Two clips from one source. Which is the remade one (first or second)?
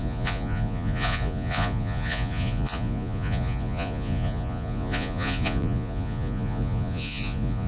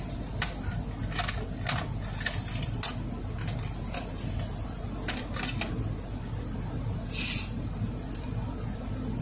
first